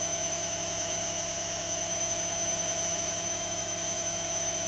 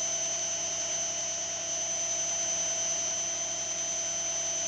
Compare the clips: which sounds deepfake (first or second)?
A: first